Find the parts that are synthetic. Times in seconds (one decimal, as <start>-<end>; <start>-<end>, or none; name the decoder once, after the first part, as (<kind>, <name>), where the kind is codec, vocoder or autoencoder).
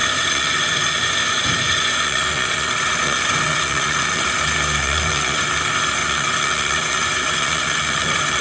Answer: 0.0-4.3 (vocoder, Vocos); 4.8-5.4; 6.0-8.4